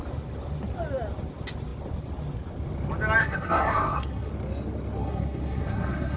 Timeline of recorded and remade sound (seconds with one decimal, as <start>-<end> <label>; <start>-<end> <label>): 0.0-3.2 recorded; 3.2-4.3 remade; 4.3-5.0 recorded; 5.0-6.2 remade